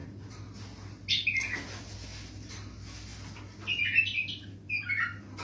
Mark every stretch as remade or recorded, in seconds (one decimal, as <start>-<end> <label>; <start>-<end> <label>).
0.0-5.4 recorded